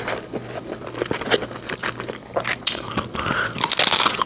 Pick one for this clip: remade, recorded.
recorded